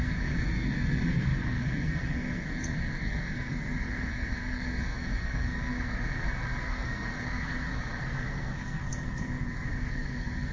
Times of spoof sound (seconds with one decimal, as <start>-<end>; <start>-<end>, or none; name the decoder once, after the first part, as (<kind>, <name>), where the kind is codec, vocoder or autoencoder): 0.0-10.5 (codec, SNAC)